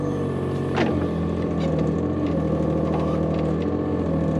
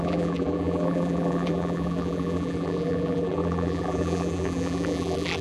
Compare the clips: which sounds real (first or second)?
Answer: first